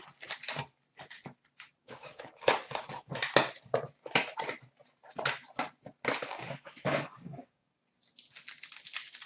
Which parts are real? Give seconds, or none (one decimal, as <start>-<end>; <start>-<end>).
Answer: 0.0-1.8; 3.1-6.3; 7.7-9.3